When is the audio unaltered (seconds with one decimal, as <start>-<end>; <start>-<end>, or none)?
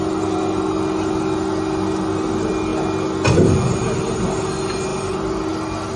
0.0-4.9; 5.5-6.0